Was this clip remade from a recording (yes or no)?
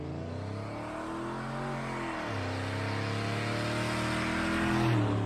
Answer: no